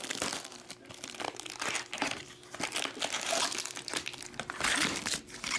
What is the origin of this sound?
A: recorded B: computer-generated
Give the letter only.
A